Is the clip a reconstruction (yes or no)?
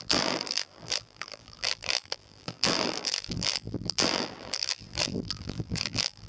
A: yes